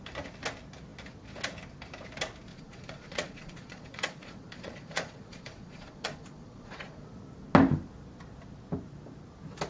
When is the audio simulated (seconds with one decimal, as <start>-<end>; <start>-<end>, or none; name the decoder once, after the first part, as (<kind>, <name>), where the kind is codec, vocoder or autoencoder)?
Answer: 2.5-7.1 (vocoder, Vocos)